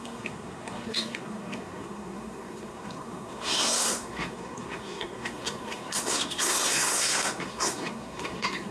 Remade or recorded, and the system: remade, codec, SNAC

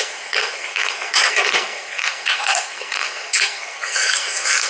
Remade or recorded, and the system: remade, codec, SNAC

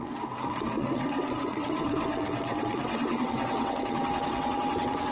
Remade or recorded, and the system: remade, vocoder, WaveNeXt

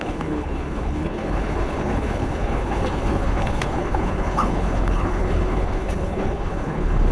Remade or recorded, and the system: remade, codec, HILCodec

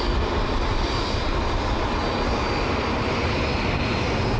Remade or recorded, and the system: recorded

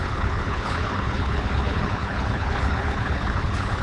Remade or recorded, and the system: remade, codec, HILCodec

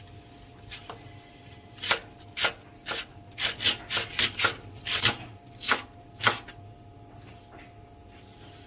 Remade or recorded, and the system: recorded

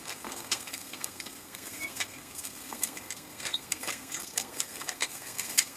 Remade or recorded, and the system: remade, codec, SNAC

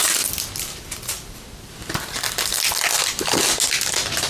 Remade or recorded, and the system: recorded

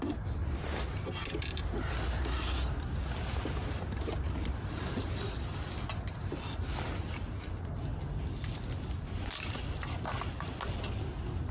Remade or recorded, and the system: recorded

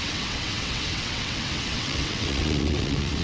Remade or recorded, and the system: remade, vocoder, WaveNeXt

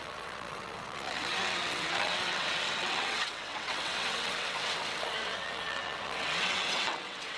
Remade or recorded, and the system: remade, vocoder, WaveNeXt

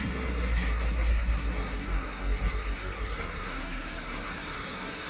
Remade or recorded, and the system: remade, codec, SNAC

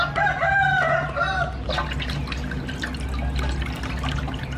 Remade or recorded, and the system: recorded